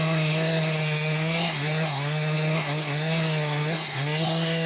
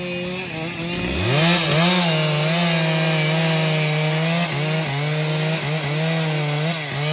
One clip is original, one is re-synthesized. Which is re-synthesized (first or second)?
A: first